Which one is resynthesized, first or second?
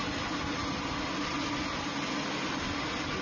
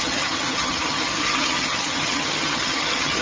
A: second